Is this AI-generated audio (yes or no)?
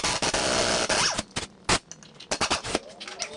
no